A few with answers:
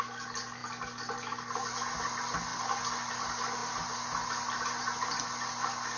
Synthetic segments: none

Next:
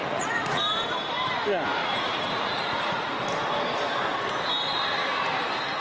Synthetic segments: 0.0-0.6 (vocoder, Vocos); 1.8-3.1

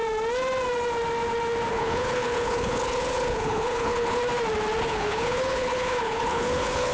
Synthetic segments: 1.7-4.2 (codec, HILCodec); 4.8-6.9

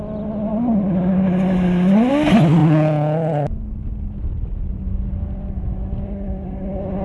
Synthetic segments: none